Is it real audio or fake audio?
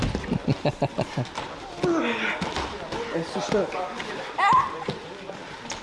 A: real